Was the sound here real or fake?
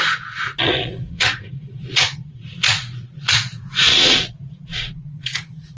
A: fake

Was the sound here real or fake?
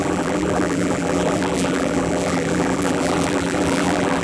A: fake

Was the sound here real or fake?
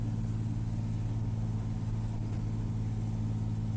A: real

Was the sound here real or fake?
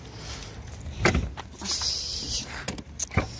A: real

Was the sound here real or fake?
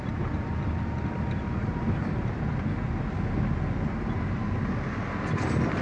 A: real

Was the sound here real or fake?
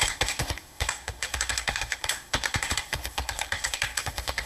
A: fake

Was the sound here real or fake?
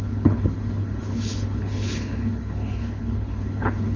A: fake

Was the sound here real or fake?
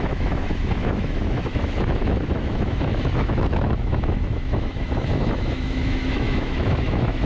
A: fake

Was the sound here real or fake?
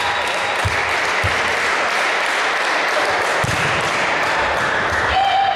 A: real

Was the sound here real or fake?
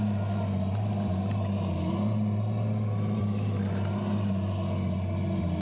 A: real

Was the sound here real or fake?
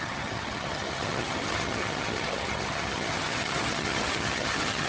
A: fake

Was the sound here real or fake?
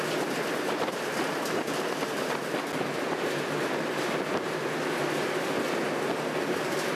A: real